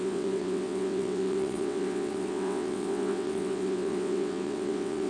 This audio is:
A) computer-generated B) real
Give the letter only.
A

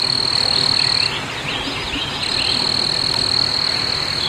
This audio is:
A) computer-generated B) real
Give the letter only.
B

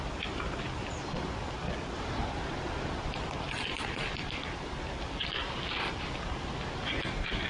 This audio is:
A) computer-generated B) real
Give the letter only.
B